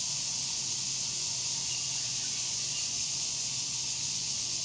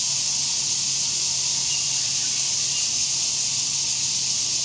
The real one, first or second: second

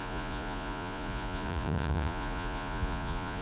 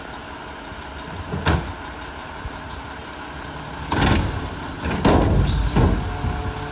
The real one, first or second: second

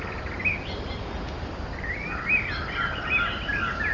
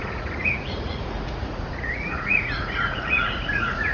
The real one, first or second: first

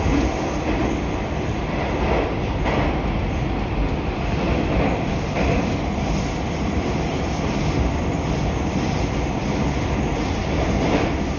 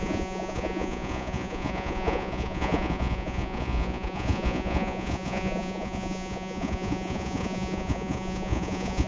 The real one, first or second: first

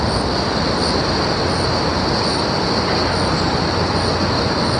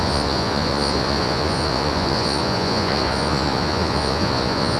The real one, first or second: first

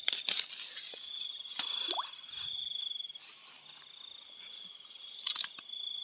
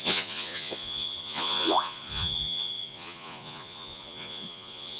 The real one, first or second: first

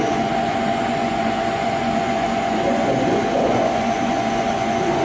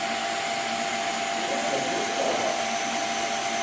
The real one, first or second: second